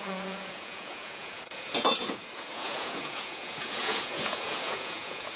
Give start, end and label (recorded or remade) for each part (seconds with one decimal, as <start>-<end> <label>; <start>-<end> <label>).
0.0-5.4 remade